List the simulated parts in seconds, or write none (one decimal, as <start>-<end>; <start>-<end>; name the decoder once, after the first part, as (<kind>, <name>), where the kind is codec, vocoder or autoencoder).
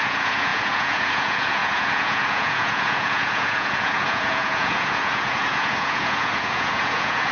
0.0-7.3 (vocoder, Vocos)